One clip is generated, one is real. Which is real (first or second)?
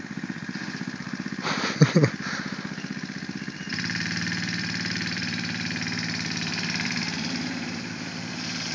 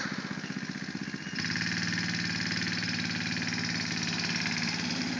second